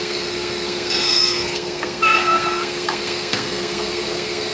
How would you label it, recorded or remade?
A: remade